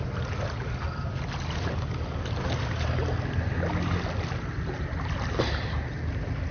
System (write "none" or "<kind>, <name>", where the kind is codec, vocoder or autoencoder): none